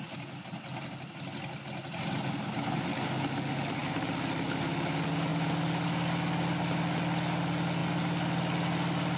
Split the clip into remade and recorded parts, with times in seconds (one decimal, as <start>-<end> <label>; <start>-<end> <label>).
0.0-9.2 recorded